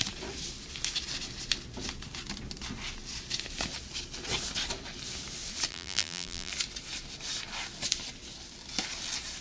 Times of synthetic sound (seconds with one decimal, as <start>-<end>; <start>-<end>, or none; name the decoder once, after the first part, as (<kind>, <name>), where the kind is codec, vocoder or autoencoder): 5.7-6.5 (vocoder, BigVGAN v2)